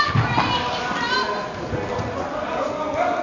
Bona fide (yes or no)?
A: yes